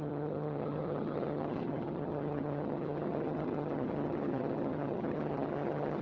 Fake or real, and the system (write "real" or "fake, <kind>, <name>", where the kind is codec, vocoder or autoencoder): fake, vocoder, HiFi-GAN